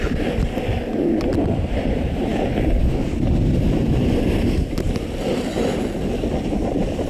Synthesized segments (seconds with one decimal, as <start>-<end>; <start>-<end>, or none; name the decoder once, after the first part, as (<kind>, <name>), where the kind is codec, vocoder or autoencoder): none